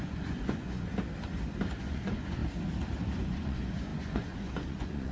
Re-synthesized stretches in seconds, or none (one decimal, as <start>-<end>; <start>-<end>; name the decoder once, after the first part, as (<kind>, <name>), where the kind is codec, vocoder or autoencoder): 0.0-0.9 (vocoder, Vocos); 1.8-2.4; 3.1-5.1